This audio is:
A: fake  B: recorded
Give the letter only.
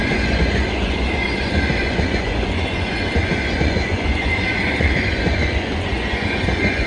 A